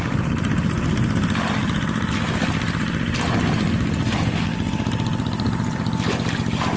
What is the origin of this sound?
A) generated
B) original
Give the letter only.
B